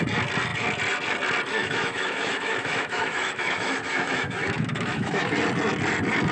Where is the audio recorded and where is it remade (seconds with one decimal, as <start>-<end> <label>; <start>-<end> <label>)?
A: 0.0-1.6 recorded; 1.6-5.3 remade; 5.3-6.3 recorded